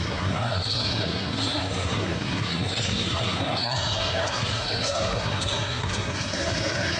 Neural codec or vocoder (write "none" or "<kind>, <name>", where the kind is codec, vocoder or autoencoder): codec, SNAC